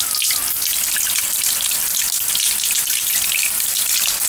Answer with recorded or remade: recorded